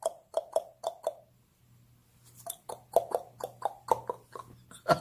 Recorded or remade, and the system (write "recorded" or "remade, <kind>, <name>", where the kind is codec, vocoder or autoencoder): recorded